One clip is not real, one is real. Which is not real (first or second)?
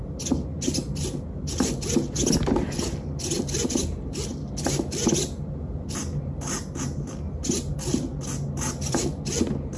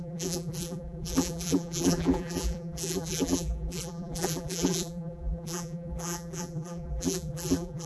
second